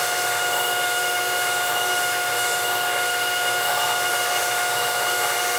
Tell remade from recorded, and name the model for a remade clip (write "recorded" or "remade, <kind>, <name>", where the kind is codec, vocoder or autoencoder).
remade, autoencoder, DAC-VAE